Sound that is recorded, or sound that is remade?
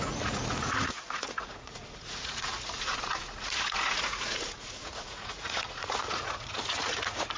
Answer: remade